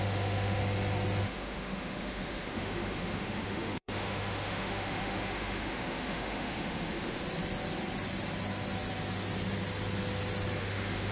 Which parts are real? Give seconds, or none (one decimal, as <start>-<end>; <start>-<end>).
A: 0.6-1.2; 7.2-10.6